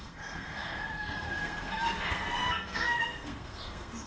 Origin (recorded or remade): remade